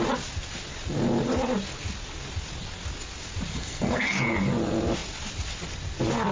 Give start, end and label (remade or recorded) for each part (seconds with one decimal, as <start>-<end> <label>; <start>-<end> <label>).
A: 0.0-3.5 recorded; 3.5-4.1 remade; 4.1-6.3 recorded